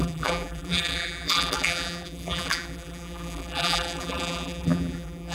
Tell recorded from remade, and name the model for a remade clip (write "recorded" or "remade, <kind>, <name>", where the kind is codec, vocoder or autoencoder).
remade, vocoder, BigVGAN v2